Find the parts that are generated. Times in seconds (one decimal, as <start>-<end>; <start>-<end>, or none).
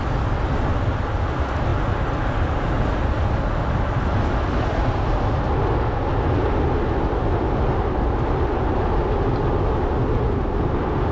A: none